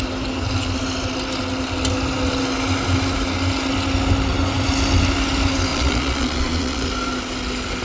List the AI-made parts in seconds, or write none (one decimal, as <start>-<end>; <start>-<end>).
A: 5.7-6.9